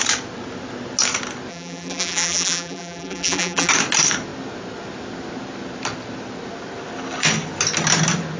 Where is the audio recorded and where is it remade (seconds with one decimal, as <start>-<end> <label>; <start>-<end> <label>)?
0.0-1.5 recorded; 1.5-3.7 remade; 3.7-8.4 recorded